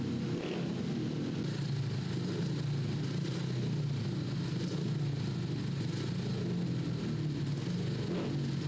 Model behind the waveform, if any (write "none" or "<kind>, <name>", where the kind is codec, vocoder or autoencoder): none